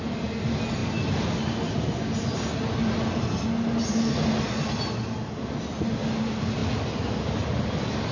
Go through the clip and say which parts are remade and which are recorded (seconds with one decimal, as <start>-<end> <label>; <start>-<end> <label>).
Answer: 0.0-8.1 recorded